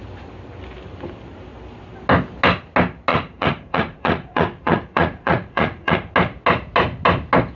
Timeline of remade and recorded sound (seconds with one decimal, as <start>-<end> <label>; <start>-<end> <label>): 0.0-3.1 recorded; 3.1-6.1 remade; 6.1-7.5 recorded